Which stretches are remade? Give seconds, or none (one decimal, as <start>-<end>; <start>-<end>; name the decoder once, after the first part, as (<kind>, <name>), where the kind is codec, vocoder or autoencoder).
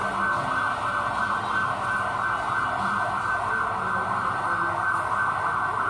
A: none